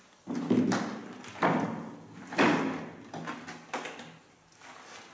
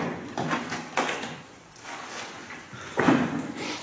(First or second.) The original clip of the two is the first